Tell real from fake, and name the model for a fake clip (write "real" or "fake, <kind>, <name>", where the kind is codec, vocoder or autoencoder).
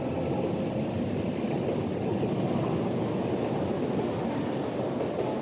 real